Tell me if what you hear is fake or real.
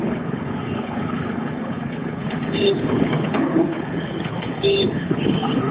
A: fake